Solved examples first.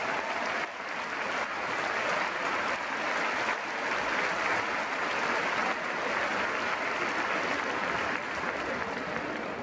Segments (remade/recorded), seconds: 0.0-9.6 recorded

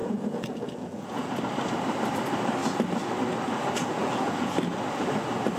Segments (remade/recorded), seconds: 0.0-1.4 remade; 1.4-4.0 recorded; 4.0-4.5 remade; 4.5-5.6 recorded

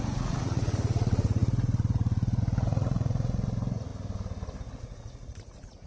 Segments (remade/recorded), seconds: 0.0-3.9 remade; 3.9-4.8 recorded; 4.8-5.9 remade

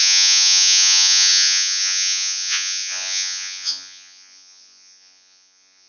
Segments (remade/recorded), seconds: 0.0-5.9 remade

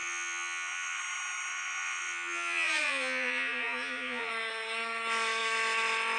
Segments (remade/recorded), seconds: 0.0-1.0 remade; 1.0-1.5 recorded; 1.5-4.3 remade; 4.3-6.2 recorded